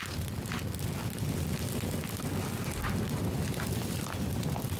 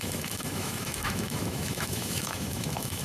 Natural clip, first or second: first